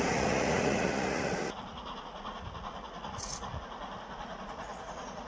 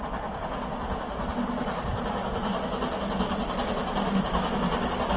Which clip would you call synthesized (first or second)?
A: first